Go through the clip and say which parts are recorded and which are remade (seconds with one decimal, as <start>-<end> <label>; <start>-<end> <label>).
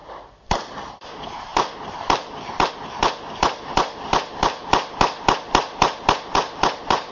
0.0-4.6 remade; 4.6-6.1 recorded; 6.1-7.1 remade